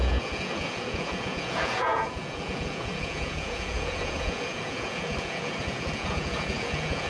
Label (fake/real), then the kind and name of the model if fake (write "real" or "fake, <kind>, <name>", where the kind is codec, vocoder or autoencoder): fake, vocoder, Vocos